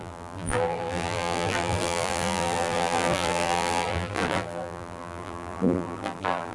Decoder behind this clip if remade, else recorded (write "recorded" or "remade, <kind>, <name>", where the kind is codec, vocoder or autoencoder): remade, vocoder, BigVGAN v2